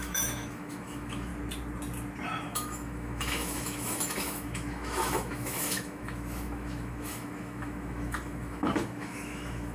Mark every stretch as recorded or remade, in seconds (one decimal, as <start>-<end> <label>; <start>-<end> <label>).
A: 0.0-1.3 remade; 1.3-2.4 recorded; 2.4-9.7 remade